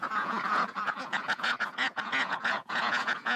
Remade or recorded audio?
remade